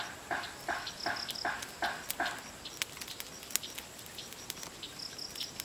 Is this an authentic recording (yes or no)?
yes